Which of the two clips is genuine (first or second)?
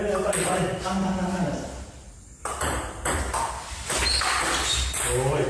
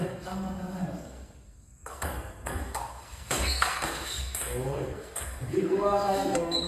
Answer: first